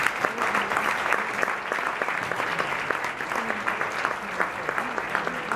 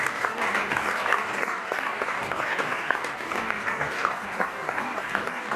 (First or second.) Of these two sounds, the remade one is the second